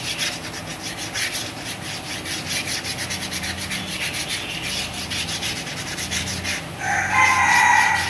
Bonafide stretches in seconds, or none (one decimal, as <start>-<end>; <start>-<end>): 0.0-8.1